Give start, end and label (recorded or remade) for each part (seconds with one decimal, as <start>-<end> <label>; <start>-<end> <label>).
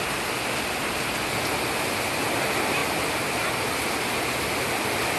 0.0-5.2 recorded